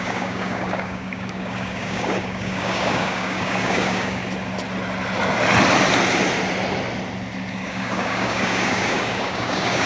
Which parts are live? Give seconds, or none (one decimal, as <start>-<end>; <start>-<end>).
4.2-7.5